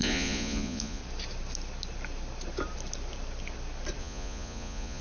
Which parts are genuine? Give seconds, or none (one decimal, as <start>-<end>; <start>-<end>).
1.0-4.0